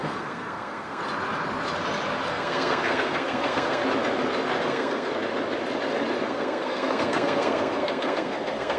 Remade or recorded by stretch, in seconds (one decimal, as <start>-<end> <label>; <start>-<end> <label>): 0.0-1.0 remade; 1.0-2.3 recorded; 2.3-3.8 remade; 3.8-4.6 recorded; 4.6-5.1 remade; 5.1-6.2 recorded; 6.2-8.8 remade